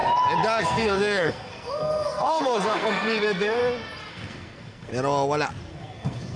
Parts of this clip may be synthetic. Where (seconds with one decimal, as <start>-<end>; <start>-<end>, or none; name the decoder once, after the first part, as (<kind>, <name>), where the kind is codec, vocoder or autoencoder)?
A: 0.6-3.6 (codec, SNAC); 4.1-4.9; 5.7-6.4